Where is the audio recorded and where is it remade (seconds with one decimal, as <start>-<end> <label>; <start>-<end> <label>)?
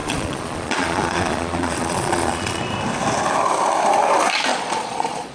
0.0-2.6 remade; 2.6-4.5 recorded; 4.5-5.3 remade